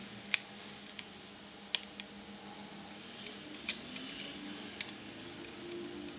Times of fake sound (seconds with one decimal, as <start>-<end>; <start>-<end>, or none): none